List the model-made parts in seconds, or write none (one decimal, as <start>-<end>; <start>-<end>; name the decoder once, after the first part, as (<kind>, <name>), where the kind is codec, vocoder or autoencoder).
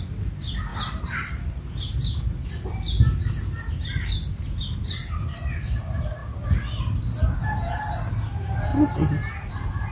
none